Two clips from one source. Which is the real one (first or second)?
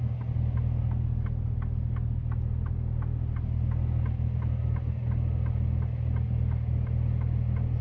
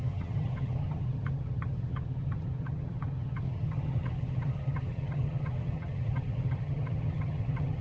first